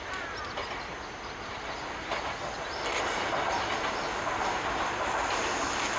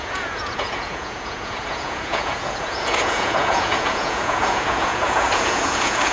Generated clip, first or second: second